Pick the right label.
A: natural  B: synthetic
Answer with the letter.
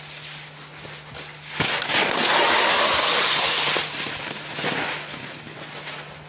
A